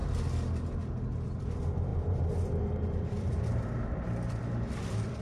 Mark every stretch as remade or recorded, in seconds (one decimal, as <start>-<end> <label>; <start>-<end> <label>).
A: 0.0-1.4 recorded; 1.4-5.2 remade